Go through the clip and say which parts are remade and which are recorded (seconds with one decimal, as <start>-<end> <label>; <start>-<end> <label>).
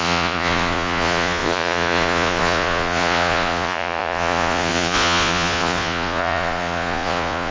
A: 0.0-7.5 remade